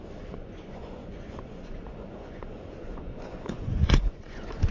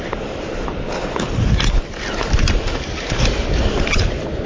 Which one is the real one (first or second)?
second